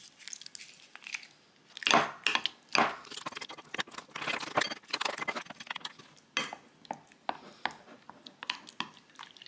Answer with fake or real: real